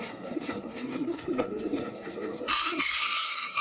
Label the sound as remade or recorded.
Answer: remade